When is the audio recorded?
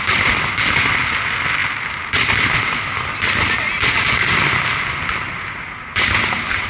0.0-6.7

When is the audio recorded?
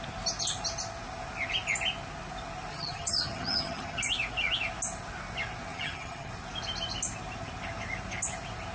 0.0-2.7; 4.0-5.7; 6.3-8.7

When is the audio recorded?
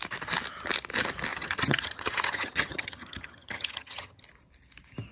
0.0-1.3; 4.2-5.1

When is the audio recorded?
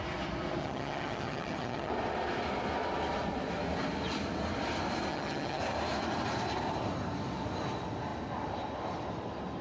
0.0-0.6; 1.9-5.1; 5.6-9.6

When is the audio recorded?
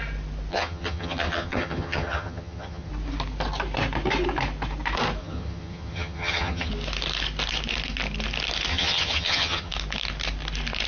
0.0-0.5; 2.9-5.2; 6.7-8.7; 9.7-10.9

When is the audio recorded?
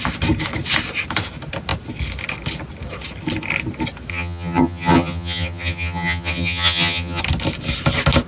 0.0-4.1; 7.2-8.3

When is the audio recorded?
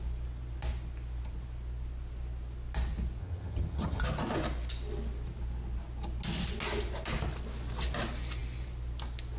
0.0-3.2; 4.0-9.4